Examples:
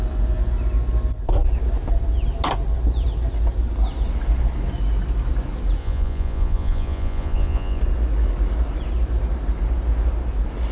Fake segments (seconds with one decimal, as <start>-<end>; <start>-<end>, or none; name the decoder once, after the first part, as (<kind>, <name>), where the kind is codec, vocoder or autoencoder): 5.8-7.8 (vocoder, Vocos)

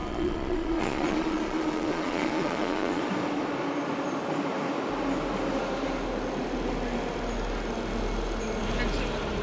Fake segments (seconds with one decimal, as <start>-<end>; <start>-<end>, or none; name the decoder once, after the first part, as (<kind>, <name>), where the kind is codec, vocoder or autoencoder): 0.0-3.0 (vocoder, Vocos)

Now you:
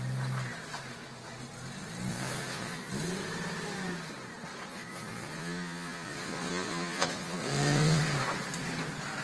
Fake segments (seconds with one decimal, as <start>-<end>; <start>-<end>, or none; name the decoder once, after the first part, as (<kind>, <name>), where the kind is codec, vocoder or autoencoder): 2.1-2.9 (vocoder, Vocos); 4.7-8.0

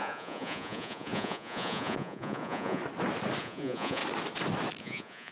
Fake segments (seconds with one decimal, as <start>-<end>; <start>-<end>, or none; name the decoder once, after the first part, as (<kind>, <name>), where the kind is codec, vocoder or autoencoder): 0.0-2.8 (vocoder, Vocos); 3.4-4.0; 4.8-5.3

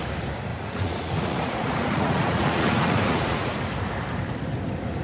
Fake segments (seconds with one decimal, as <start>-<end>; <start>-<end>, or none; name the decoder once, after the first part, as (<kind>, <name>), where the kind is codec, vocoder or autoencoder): 0.5-3.5 (vocoder, Vocos)

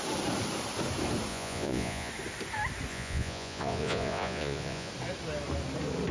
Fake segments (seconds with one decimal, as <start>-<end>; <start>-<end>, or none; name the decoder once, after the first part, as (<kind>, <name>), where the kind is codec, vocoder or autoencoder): 1.3-2.1 (vocoder, Vocos); 2.9-4.9